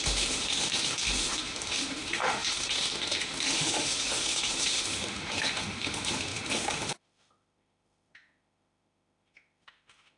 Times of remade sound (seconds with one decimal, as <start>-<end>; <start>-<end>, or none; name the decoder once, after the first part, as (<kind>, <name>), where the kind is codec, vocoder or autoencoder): 0.0-10.2 (autoencoder, DAC-VAE)